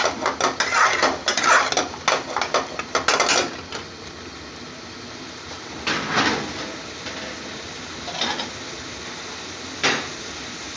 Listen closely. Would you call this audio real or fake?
real